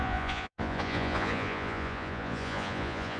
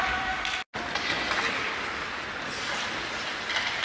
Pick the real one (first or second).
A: second